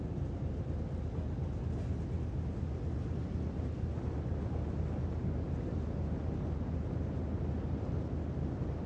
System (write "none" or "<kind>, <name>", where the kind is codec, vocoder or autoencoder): none